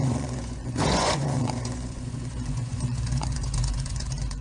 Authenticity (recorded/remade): remade